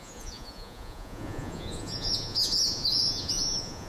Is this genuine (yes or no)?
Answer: no